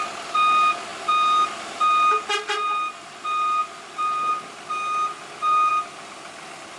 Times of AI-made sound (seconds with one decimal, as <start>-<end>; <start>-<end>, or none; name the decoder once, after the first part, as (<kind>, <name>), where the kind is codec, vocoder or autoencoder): none

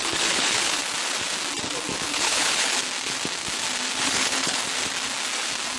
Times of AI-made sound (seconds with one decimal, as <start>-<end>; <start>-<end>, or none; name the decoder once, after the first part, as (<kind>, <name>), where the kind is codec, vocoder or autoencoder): 0.0-0.8 (codec, HILCodec); 2.1-2.8; 4.0-4.6

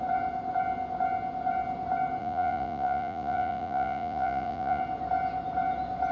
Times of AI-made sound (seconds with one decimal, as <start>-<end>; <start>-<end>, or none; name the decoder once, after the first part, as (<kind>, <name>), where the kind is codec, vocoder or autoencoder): 2.2-4.8 (vocoder, Vocos)

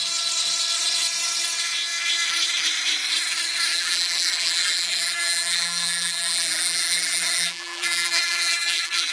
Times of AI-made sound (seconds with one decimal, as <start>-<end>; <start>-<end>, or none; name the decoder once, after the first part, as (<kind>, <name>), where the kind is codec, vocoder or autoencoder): 3.7-9.1 (vocoder, BigVGAN v2)